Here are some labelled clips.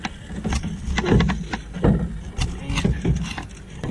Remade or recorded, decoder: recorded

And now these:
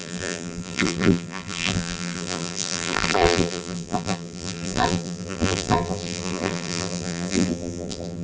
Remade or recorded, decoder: remade, vocoder, BigVGAN v2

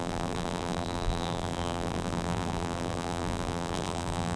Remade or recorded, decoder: remade, vocoder, BigVGAN v2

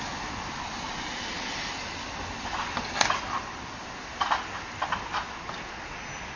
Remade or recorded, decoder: recorded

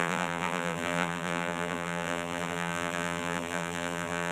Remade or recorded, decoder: remade, vocoder, BigVGAN v2